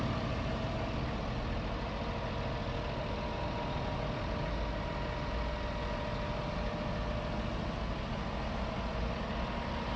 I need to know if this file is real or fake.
real